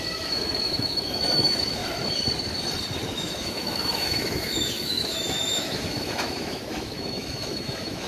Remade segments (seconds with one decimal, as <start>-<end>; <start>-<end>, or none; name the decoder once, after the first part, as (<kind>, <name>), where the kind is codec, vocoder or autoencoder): 0.0-1.8 (autoencoder, DAC-VAE); 3.1-8.1